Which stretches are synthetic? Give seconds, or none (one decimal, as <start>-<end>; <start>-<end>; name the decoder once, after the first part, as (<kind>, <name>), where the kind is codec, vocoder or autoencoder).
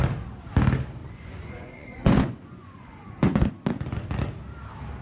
1.0-3.5 (vocoder, Vocos)